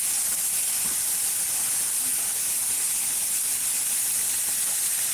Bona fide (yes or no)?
yes